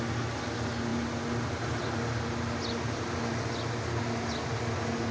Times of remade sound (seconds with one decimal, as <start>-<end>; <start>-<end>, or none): none